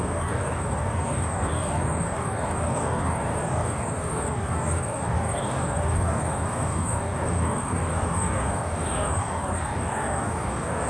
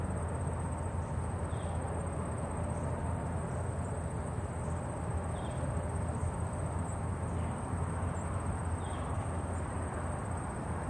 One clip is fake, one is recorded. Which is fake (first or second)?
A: first